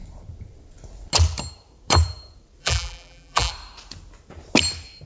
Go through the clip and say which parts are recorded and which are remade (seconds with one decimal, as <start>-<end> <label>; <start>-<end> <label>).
0.0-2.6 recorded; 2.6-3.5 remade; 3.5-5.1 recorded

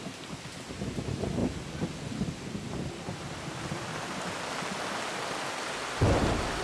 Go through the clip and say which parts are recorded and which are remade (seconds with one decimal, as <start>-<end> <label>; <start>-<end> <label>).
0.0-1.4 recorded; 1.4-5.4 remade; 5.4-6.6 recorded

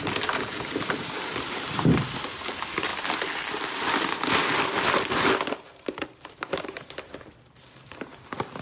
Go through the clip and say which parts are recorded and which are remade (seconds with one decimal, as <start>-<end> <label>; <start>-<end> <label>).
0.0-2.9 remade; 2.9-5.5 recorded; 5.5-8.6 remade